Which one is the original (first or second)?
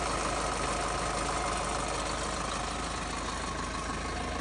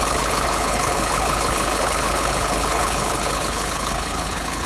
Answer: first